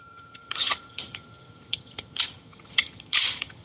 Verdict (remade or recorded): remade